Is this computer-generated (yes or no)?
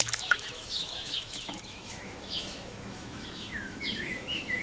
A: yes